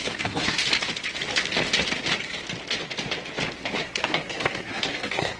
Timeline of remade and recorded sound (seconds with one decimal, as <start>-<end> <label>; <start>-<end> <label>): 0.0-0.6 remade; 0.6-3.8 recorded; 3.8-5.4 remade